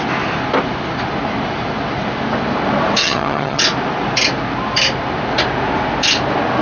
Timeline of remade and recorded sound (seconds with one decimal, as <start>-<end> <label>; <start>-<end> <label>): 0.0-3.0 recorded; 3.0-3.6 remade; 3.6-6.6 recorded